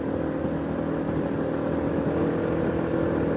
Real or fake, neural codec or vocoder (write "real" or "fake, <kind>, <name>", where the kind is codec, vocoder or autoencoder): real